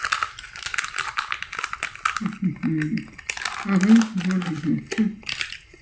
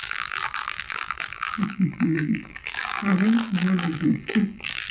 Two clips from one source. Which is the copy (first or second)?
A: second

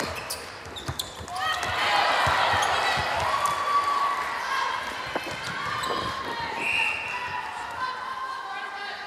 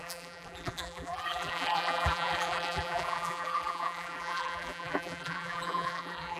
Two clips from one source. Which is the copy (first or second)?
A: second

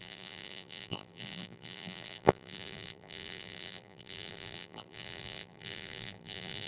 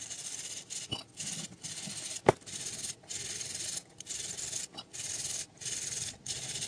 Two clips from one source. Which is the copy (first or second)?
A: first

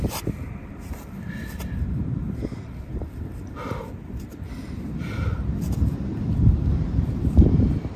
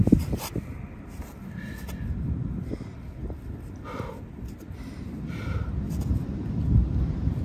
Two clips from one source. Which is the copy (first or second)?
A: first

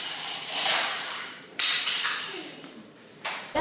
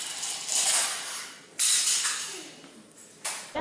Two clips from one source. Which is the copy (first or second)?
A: first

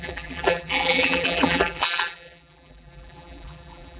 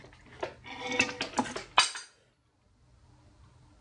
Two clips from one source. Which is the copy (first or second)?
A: first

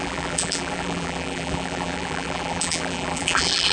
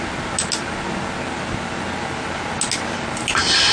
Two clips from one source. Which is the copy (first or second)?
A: first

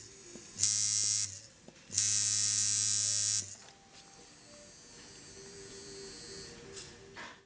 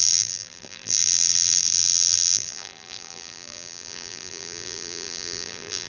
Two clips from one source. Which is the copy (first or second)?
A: second